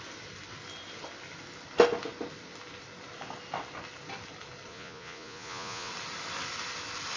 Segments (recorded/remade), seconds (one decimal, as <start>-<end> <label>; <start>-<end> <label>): 0.0-4.7 recorded; 4.7-5.9 remade; 5.9-7.2 recorded